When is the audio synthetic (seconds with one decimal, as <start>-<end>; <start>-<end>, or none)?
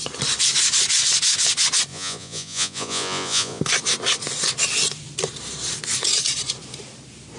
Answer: 1.9-3.6